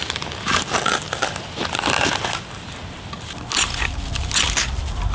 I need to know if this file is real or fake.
real